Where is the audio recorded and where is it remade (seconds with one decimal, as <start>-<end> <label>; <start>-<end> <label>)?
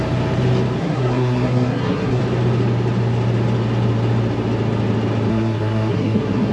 0.0-0.8 recorded; 0.8-2.2 remade; 2.2-5.3 recorded; 5.3-6.5 remade